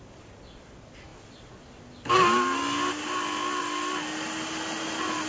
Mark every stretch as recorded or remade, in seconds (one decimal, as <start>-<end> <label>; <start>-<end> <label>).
0.0-5.3 recorded